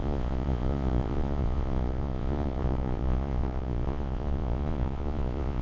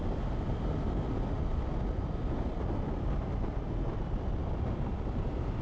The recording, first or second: second